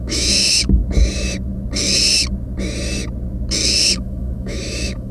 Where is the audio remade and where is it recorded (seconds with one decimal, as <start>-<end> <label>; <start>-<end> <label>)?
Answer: 0.0-0.8 remade; 0.8-3.9 recorded; 3.9-5.1 remade

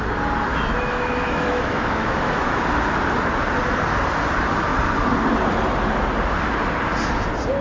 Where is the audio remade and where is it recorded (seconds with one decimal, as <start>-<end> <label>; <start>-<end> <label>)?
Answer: 0.0-0.5 recorded; 0.5-2.6 remade; 2.6-7.6 recorded

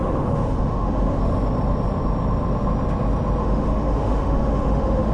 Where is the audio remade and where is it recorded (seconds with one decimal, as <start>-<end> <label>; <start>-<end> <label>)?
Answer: 0.0-1.2 remade; 1.2-3.4 recorded; 3.4-5.1 remade

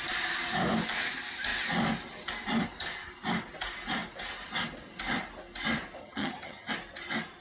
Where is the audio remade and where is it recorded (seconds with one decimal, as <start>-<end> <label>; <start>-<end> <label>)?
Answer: 0.0-6.0 recorded; 6.0-6.7 remade; 6.7-7.4 recorded

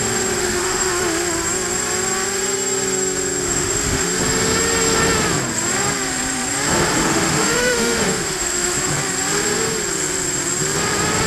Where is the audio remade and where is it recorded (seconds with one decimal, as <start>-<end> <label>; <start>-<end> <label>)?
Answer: 0.0-0.4 recorded; 0.4-1.0 remade; 1.0-3.4 recorded; 3.4-4.2 remade; 4.2-7.0 recorded; 7.0-8.9 remade; 8.9-11.3 recorded

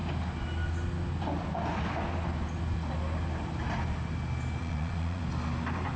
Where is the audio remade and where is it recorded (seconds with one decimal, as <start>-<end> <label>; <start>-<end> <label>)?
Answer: 0.0-4.6 recorded; 4.6-5.2 remade; 5.2-6.0 recorded